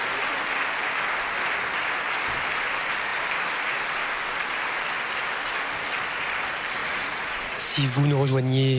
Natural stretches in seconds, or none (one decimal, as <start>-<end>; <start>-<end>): 0.0-6.8; 7.6-8.8